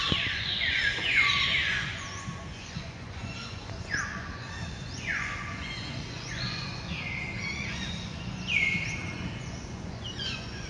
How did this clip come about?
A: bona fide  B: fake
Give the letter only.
B